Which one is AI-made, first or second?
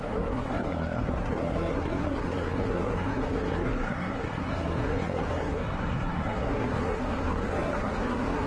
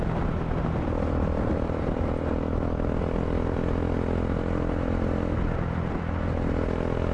first